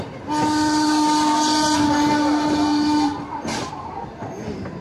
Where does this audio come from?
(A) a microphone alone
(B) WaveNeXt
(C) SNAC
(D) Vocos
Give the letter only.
A